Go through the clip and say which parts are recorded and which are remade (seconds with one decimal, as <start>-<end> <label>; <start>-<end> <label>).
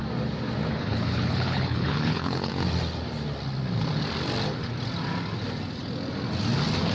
0.0-0.7 recorded; 0.7-2.5 remade; 2.5-6.9 recorded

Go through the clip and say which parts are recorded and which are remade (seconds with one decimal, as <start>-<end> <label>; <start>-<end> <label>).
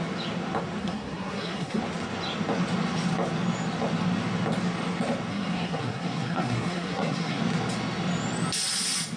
0.0-0.8 recorded; 0.8-1.8 remade; 1.8-5.3 recorded; 5.3-7.4 remade; 7.4-9.2 recorded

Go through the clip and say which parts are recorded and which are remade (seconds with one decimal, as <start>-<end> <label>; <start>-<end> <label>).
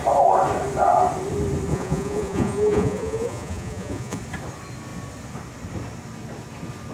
0.0-1.7 recorded; 1.7-4.2 remade; 4.2-6.9 recorded